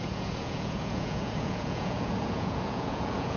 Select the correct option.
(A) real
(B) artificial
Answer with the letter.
B